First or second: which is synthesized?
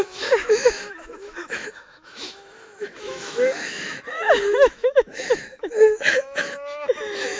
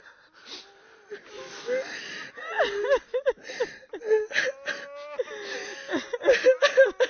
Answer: first